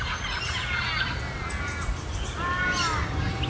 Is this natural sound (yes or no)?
yes